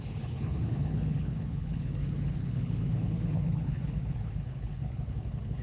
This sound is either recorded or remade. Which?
remade